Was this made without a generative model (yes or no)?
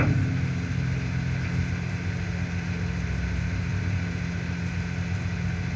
yes